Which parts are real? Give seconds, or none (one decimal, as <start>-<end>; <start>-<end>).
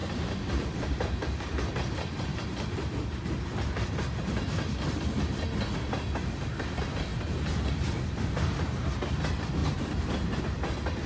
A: 1.6-2.3; 2.9-9.6; 10.4-11.1